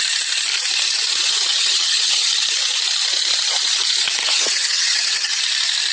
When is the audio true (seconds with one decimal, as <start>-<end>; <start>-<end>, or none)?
0.0-1.5; 2.4-4.2; 5.4-5.9